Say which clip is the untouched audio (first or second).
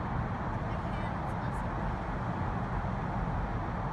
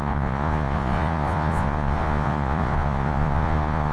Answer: first